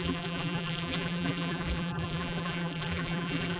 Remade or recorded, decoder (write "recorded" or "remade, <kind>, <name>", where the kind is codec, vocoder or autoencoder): remade, vocoder, BigVGAN v2